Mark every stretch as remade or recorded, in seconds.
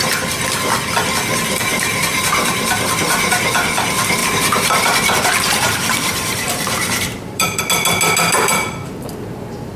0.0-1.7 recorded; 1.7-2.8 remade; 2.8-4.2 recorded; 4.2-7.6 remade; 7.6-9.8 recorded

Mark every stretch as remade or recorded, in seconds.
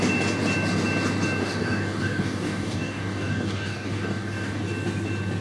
0.0-1.4 recorded; 1.4-4.6 remade; 4.6-5.4 recorded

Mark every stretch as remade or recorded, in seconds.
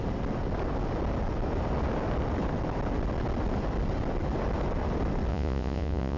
0.0-5.3 recorded; 5.3-6.2 remade